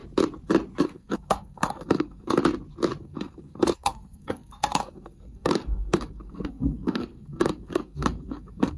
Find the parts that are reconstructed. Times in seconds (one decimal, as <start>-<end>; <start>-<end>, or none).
0.8-2.4; 3.0-8.8